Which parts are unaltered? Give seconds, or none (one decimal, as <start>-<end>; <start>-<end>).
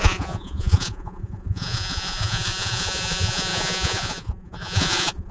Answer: none